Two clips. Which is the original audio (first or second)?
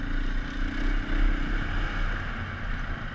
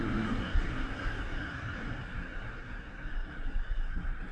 first